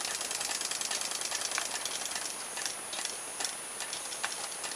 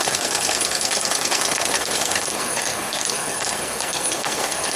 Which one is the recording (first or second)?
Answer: first